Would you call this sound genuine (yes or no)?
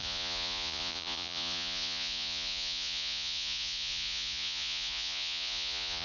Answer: no